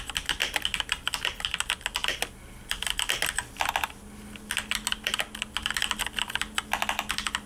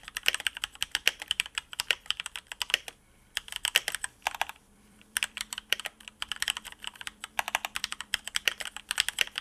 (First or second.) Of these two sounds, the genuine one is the first